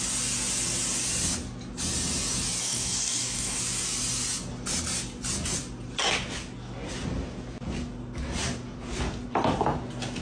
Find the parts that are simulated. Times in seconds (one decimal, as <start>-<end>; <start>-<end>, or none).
2.6-3.6